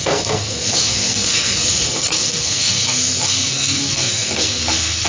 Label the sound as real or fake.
fake